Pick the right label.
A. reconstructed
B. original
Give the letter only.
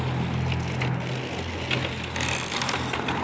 B